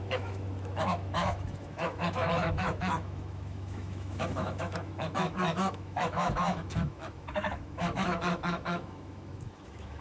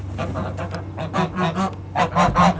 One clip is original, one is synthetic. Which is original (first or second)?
second